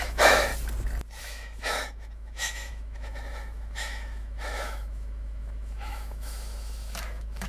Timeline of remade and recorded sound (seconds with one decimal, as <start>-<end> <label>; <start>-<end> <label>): 0.0-0.5 remade; 0.5-1.2 recorded; 1.2-7.5 remade